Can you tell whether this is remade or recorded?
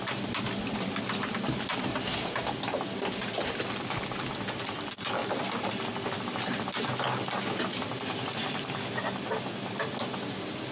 recorded